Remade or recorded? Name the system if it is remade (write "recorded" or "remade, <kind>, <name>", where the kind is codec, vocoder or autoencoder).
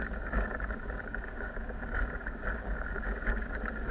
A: remade, codec, DAC